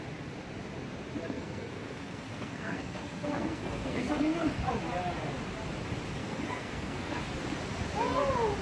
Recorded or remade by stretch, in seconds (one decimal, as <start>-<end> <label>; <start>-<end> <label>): 0.0-1.2 recorded; 1.2-4.6 remade; 4.6-6.2 recorded; 6.2-7.2 remade; 7.2-8.6 recorded